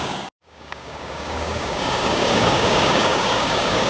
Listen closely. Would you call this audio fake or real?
fake